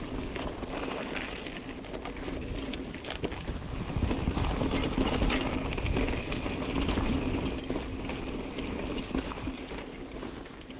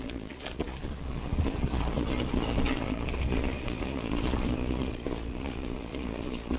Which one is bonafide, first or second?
first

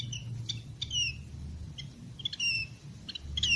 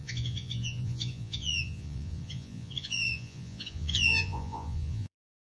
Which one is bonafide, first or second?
first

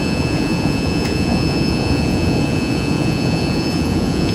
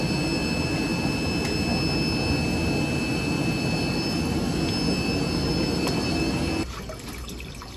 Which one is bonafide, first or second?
second